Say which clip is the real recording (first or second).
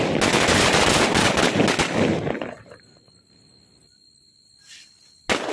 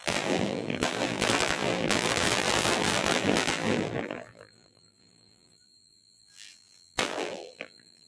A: first